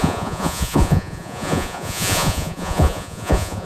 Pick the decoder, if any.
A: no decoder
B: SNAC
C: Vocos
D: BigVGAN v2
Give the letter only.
C